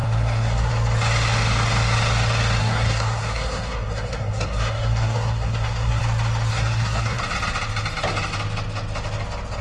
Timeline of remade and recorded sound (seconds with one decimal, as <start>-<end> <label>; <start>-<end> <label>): 0.0-0.7 remade; 0.7-2.6 recorded; 2.6-6.0 remade; 6.0-6.5 recorded; 6.5-7.2 remade; 7.2-9.6 recorded